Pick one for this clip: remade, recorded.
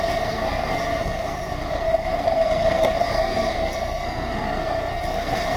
remade